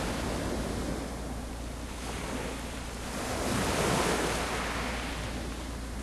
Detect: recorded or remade recorded